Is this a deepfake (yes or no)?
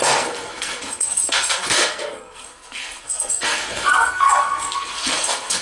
yes